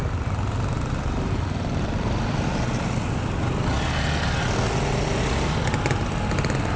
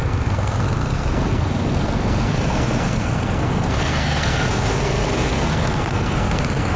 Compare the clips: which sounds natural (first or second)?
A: first